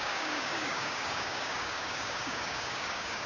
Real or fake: fake